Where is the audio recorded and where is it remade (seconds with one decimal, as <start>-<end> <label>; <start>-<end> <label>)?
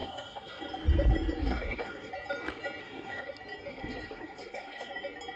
0.0-0.6 remade; 0.6-1.4 recorded; 1.4-2.1 remade; 2.1-2.8 recorded; 2.8-3.3 remade; 3.3-3.7 recorded; 3.7-4.9 remade; 4.9-5.4 recorded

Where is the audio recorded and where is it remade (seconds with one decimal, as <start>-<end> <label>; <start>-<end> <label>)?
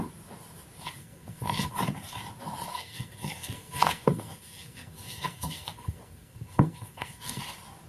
0.0-1.0 recorded; 1.0-1.7 remade; 1.7-2.7 recorded; 2.7-7.4 remade; 7.4-7.9 recorded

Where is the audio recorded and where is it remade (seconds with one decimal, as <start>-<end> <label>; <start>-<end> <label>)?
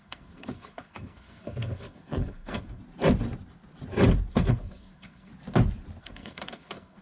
0.0-2.8 remade; 2.8-4.3 recorded; 4.3-5.3 remade; 5.3-6.0 recorded; 6.0-7.0 remade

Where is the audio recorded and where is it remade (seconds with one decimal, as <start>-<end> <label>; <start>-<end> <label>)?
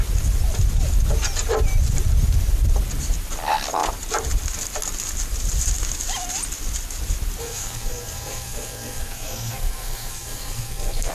0.0-7.4 recorded; 7.4-11.1 remade